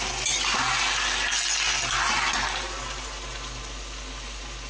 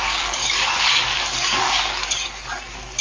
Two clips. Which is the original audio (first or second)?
first